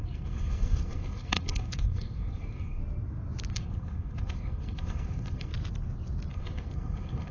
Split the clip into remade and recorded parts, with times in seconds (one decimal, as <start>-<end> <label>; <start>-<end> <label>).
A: 0.0-2.8 remade; 2.8-3.5 recorded; 3.5-5.5 remade; 5.5-6.3 recorded; 6.3-7.3 remade